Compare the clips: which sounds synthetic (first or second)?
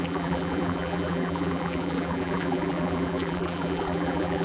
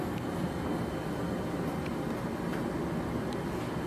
first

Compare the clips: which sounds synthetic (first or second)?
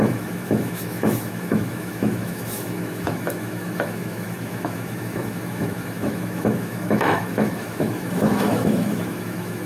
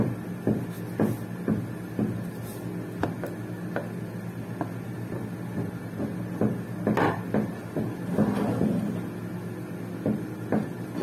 first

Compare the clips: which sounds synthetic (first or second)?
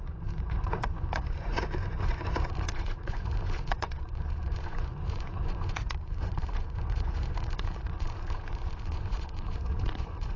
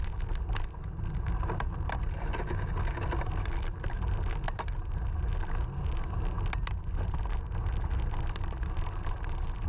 first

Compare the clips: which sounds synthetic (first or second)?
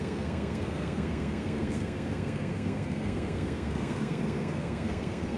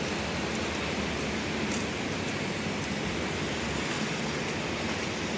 first